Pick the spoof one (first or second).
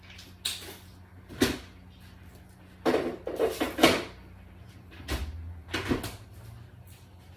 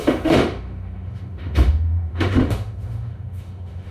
second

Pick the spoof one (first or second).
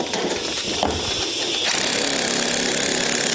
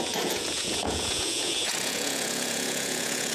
second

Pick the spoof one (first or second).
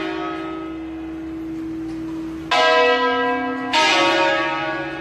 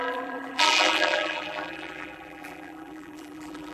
second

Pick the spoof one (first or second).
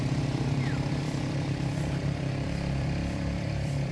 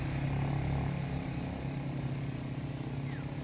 first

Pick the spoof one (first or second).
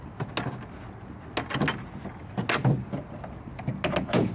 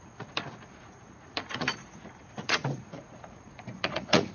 second